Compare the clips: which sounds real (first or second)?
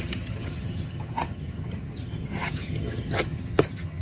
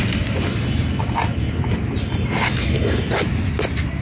second